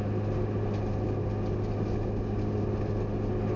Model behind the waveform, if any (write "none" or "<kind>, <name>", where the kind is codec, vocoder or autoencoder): none